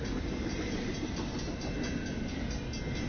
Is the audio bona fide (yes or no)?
yes